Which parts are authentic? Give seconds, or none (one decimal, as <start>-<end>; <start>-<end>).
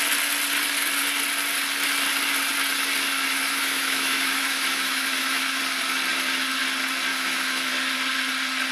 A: 0.0-3.3; 5.6-7.1; 7.7-8.7